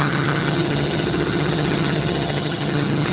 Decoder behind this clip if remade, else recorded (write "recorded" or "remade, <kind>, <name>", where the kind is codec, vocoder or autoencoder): remade, vocoder, HiFi-GAN